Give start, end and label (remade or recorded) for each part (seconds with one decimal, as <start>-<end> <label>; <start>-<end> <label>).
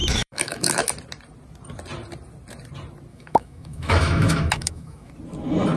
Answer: 0.0-0.9 remade; 0.9-3.1 recorded; 3.1-5.1 remade; 5.1-5.8 recorded